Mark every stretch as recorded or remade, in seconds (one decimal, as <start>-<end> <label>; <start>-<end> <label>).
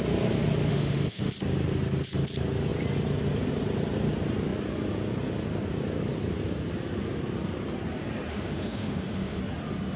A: 0.0-0.7 recorded; 0.7-1.3 remade; 1.3-8.3 recorded; 8.3-9.4 remade; 9.4-10.0 recorded